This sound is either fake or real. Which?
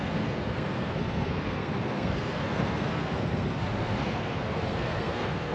fake